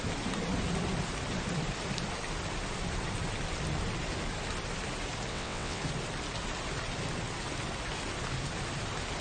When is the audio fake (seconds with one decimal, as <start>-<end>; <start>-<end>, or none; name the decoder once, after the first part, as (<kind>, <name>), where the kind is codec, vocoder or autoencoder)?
5.3-5.8 (vocoder, WaveNeXt)